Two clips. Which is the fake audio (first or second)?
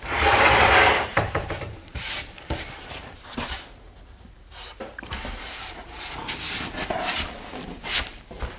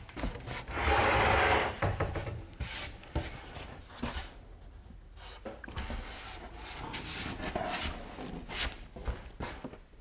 first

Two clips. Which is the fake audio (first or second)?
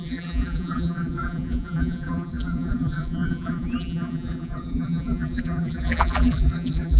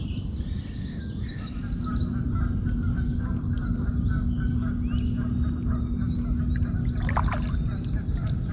first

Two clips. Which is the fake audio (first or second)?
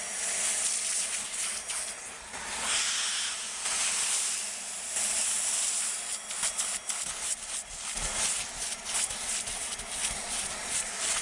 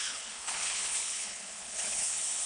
second